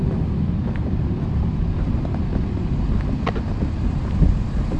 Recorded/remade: recorded